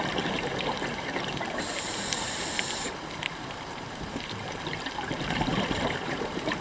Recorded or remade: remade